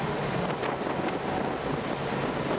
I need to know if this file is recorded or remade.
recorded